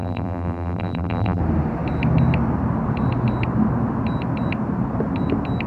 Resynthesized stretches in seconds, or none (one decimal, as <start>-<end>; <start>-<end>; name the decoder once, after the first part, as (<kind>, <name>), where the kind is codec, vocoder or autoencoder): 0.0-1.4 (vocoder, BigVGAN v2)